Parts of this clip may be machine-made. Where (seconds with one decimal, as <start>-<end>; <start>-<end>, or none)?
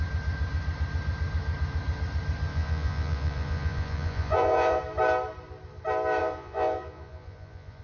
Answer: 2.5-4.8; 6.2-7.8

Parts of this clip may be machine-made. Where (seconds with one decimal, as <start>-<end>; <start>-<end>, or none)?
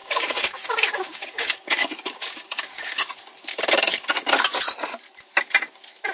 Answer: 0.0-3.1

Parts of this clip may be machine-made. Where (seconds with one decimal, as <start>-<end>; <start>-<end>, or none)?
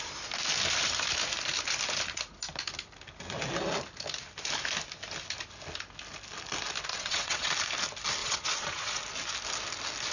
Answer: 6.9-7.5; 8.2-9.0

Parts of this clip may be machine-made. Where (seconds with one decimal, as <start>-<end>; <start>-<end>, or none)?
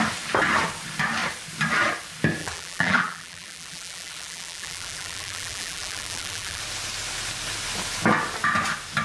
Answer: 2.4-6.6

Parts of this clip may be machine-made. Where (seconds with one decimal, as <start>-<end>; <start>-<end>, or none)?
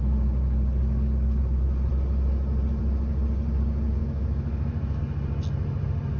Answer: 4.0-5.0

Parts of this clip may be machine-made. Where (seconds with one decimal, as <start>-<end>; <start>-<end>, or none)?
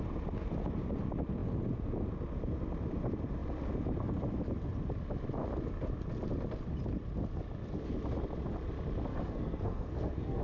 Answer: 9.1-10.4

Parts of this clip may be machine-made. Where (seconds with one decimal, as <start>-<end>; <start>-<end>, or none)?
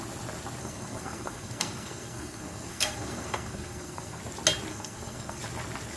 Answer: 0.6-4.2; 4.7-5.4